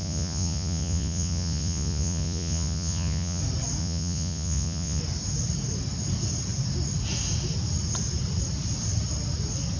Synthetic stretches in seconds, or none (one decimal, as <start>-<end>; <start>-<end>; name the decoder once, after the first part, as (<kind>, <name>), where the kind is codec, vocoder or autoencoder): 0.0-3.4 (vocoder, Vocos); 3.8-5.0